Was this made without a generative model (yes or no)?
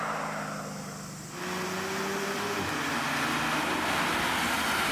yes